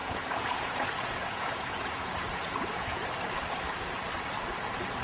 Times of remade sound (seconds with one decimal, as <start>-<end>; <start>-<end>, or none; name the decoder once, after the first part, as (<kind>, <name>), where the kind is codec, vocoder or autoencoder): 0.0-3.0 (vocoder, Vocos)